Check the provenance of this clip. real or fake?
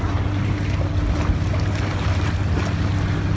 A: real